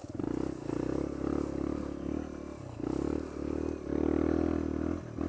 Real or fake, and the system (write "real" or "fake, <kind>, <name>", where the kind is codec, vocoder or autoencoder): real